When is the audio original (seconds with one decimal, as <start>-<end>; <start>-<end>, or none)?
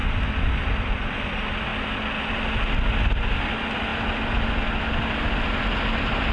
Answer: 0.0-6.3